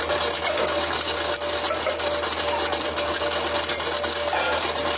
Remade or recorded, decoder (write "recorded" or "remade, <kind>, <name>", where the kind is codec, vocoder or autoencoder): recorded